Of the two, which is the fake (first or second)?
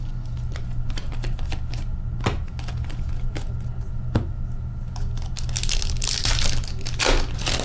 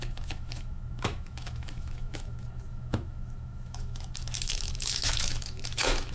second